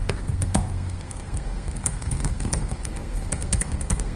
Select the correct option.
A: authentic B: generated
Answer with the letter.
B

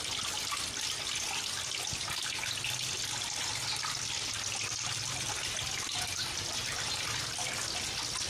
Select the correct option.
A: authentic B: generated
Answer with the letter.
A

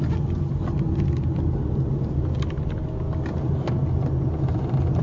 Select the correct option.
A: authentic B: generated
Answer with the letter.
A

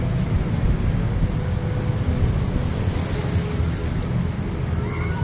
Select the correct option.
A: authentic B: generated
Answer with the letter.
A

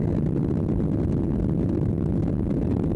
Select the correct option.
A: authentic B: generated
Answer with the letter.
A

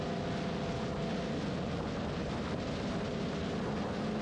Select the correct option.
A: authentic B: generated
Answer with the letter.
A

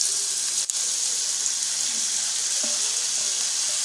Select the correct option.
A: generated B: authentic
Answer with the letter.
B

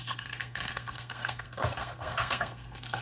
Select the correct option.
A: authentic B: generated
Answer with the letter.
B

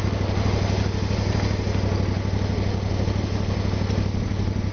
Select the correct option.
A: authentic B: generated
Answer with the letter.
A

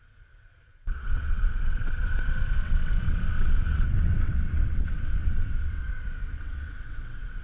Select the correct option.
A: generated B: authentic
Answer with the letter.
A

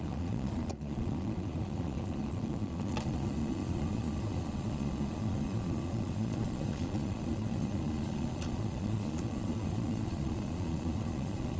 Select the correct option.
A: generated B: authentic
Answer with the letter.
A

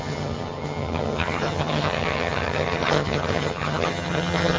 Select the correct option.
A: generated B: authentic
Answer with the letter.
A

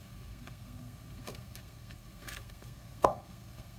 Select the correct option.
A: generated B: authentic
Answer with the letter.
A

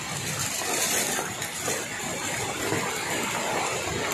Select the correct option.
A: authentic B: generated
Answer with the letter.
A